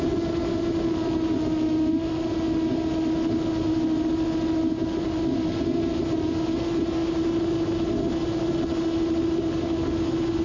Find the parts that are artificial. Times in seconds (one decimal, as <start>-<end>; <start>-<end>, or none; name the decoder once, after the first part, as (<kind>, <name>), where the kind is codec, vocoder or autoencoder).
none